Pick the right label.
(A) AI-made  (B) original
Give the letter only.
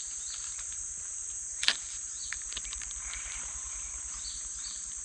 A